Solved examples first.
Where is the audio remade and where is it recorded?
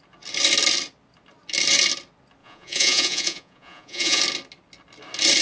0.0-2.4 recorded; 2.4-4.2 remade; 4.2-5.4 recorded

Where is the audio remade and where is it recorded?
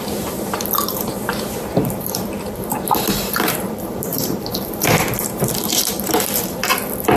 0.0-6.6 remade; 6.6-7.2 recorded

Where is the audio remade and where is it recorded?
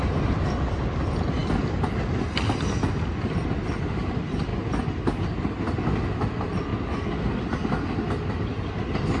0.0-9.2 recorded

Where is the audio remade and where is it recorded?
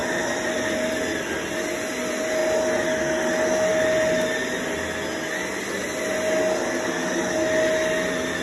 0.0-8.4 recorded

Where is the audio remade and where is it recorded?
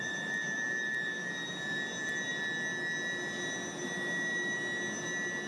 0.0-5.5 recorded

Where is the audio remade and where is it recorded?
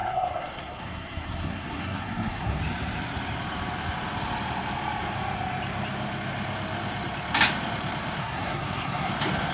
0.0-2.6 remade; 2.6-8.2 recorded; 8.2-9.1 remade; 9.1-9.5 recorded